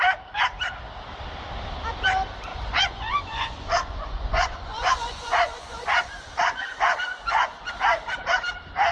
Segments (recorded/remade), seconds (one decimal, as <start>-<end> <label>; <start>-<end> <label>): 0.0-2.5 recorded; 2.5-7.7 remade; 7.7-8.9 recorded